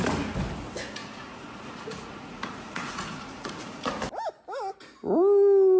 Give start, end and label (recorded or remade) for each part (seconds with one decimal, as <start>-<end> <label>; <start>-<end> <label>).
0.0-1.0 recorded; 1.0-3.9 remade; 3.9-5.8 recorded